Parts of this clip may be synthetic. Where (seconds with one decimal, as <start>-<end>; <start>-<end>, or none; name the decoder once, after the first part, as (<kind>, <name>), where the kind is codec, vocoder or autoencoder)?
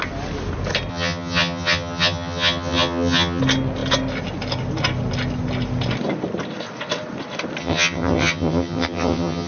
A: 0.9-3.4 (vocoder, HiFi-GAN); 7.6-9.5